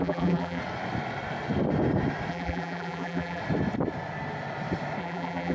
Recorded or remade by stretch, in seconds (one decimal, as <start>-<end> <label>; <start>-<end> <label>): 0.0-0.6 remade; 0.6-2.3 recorded; 2.3-3.4 remade; 3.4-5.0 recorded; 5.0-5.5 remade